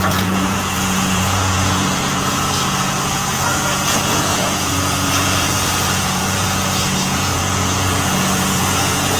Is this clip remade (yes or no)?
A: yes